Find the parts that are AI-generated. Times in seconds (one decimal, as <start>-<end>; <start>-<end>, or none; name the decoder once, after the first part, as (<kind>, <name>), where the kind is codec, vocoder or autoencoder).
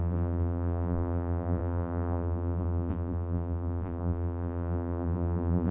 0.0-5.7 (vocoder, BigVGAN v2)